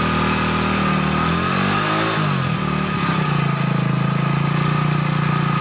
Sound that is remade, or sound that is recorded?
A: recorded